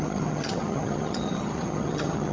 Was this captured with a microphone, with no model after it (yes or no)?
no